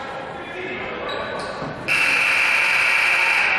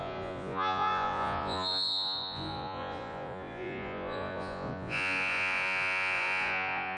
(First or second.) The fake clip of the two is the second